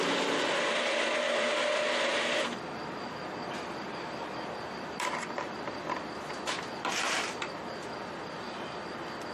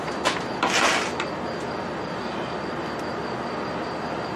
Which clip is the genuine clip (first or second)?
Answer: second